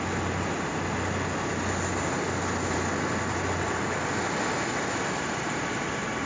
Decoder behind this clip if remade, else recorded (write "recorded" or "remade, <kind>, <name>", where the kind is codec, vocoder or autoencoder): recorded